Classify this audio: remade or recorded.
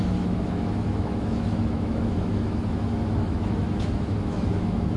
remade